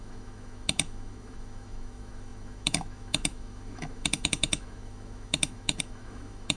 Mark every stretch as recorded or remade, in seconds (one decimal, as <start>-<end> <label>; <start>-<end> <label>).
0.0-6.6 remade

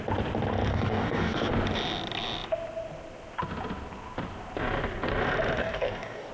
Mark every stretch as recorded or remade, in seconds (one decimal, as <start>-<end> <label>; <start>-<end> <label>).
0.0-0.7 recorded; 0.7-1.5 remade; 1.5-5.6 recorded; 5.6-6.3 remade

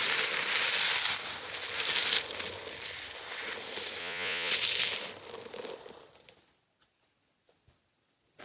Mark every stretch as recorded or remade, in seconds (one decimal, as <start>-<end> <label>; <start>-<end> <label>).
0.0-4.0 recorded; 4.0-4.5 remade; 4.5-8.4 recorded

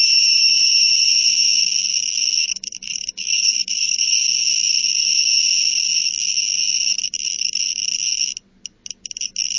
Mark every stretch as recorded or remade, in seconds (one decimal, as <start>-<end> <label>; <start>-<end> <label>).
0.0-2.4 recorded; 2.4-4.2 remade; 4.2-9.6 recorded